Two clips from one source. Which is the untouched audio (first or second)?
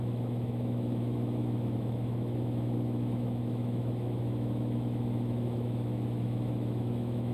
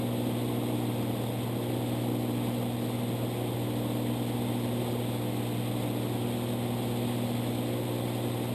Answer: second